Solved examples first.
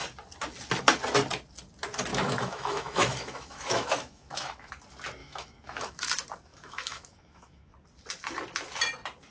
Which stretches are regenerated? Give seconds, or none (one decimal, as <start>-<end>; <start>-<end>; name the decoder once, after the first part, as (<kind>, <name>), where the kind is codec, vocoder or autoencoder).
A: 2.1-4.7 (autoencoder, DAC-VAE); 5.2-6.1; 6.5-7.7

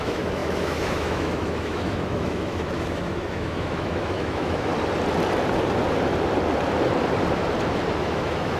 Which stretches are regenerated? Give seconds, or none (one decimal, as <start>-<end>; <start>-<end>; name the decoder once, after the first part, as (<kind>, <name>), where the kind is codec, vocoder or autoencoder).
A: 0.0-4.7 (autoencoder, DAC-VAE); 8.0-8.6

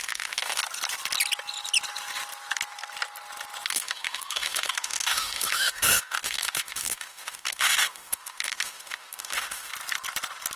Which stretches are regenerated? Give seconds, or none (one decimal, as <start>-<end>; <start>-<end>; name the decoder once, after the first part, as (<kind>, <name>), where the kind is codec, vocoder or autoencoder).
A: 0.0-0.6 (autoencoder, DAC-VAE); 3.7-9.7